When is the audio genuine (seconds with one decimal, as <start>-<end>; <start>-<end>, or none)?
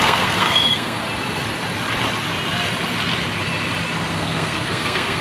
1.0-4.1